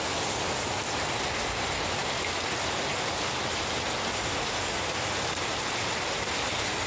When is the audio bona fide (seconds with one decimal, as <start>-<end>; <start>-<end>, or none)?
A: 0.0-6.9